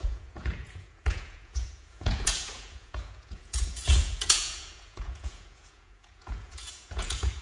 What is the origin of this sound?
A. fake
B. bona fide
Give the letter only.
A